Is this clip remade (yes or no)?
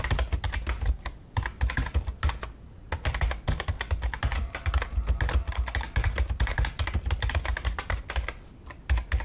no